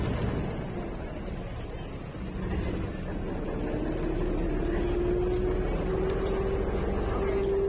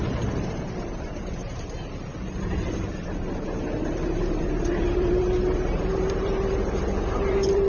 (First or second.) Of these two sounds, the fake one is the second